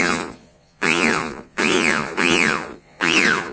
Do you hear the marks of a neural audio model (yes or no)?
yes